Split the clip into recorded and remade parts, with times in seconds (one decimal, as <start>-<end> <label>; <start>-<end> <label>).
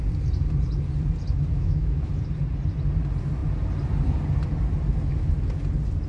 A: 0.0-1.5 recorded; 1.5-2.1 remade; 2.1-6.1 recorded